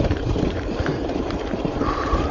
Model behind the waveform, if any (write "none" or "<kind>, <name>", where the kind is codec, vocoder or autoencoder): vocoder, BigVGAN v2